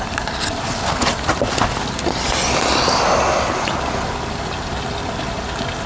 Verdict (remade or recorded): recorded